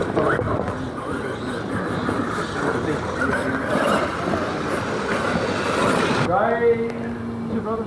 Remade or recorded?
recorded